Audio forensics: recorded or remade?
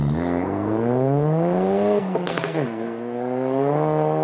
remade